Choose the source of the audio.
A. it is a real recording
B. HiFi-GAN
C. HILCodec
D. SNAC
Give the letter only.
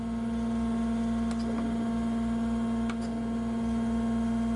A